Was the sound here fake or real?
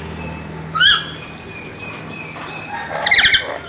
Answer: real